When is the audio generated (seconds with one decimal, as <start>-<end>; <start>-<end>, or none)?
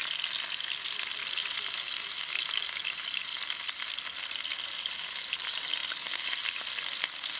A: none